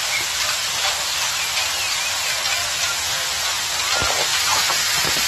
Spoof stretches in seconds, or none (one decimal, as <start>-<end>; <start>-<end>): 4.3-4.8